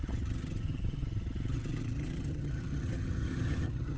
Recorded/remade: remade